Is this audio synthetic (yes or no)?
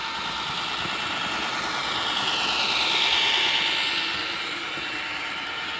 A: no